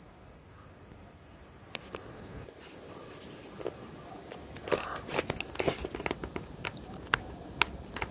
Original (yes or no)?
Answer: yes